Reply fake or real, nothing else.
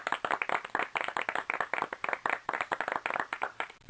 fake